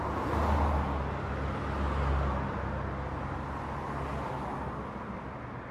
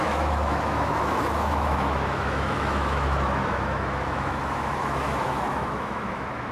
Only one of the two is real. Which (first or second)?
first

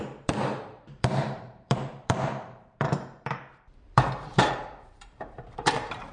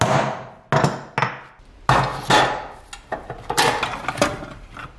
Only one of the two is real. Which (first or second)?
second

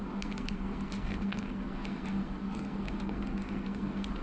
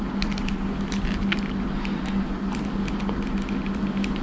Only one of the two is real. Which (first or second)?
second